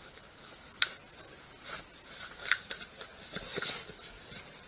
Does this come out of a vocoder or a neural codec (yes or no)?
no